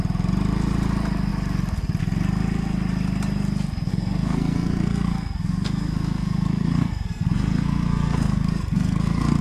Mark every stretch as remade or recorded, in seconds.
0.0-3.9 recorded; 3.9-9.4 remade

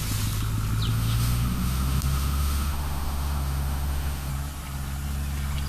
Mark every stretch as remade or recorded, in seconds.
0.0-0.9 recorded; 0.9-4.3 remade; 4.3-5.7 recorded

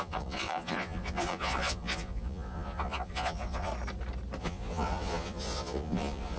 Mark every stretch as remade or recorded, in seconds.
0.0-3.7 remade; 3.7-4.4 recorded; 4.4-6.4 remade